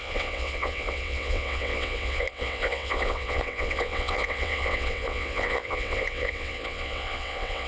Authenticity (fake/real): fake